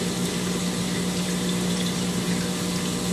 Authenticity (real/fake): real